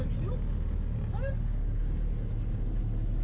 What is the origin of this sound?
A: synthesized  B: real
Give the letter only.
B